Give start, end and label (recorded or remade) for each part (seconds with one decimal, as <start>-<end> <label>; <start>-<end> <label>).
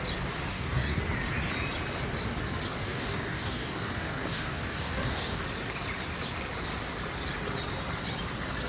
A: 0.0-0.5 recorded; 0.5-1.0 remade; 1.0-2.7 recorded; 2.7-5.4 remade; 5.4-8.7 recorded